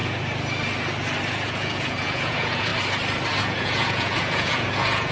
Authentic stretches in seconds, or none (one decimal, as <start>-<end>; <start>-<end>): 0.0-1.3; 2.7-3.4